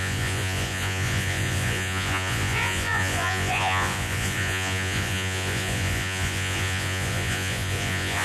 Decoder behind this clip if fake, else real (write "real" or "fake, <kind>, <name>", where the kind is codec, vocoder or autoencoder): fake, vocoder, Vocos